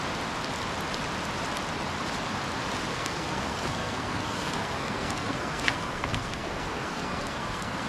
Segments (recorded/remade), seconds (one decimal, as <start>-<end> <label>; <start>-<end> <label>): 0.0-2.9 recorded; 2.9-7.9 remade